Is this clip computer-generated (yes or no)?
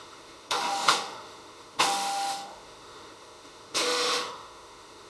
yes